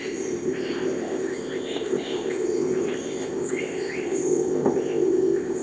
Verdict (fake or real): fake